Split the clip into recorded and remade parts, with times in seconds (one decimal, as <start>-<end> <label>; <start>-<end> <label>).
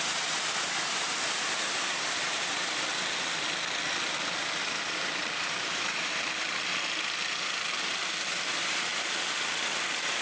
0.0-2.9 remade; 2.9-4.8 recorded; 4.8-6.7 remade; 6.7-7.7 recorded; 7.7-8.9 remade; 8.9-10.2 recorded